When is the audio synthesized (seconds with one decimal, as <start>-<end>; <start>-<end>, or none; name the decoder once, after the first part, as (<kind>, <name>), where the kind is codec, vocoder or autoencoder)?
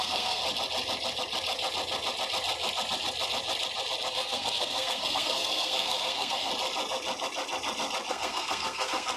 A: 0.0-0.4 (codec, SNAC); 4.1-6.5; 8.1-9.2